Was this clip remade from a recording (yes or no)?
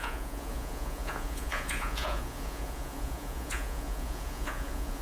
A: yes